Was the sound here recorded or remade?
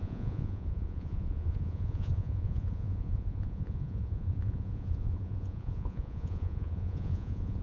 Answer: remade